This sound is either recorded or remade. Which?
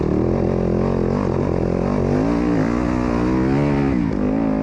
recorded